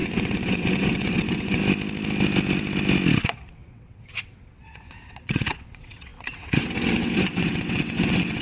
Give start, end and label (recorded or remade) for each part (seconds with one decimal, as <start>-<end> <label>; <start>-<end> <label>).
0.0-1.6 remade; 1.6-3.2 recorded; 3.2-8.4 remade